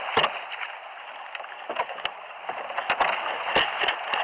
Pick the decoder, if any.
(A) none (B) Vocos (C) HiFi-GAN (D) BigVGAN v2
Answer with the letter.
A